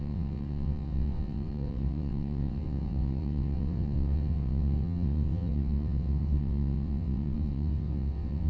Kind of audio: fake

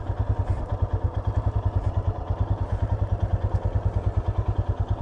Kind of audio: real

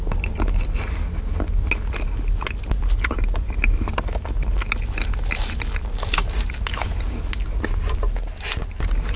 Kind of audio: real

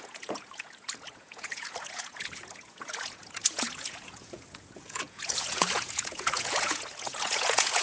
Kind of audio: fake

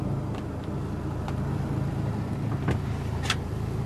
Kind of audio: real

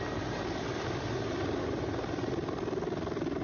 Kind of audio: real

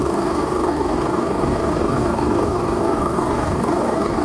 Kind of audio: fake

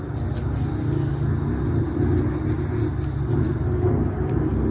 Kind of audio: real